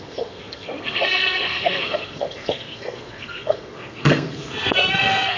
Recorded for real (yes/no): no